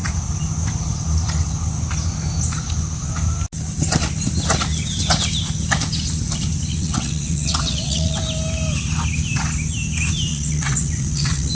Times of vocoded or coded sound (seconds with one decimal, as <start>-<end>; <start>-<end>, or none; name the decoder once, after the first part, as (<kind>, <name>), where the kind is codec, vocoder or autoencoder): 6.7-8.2 (vocoder, WaveNeXt); 10.3-11.5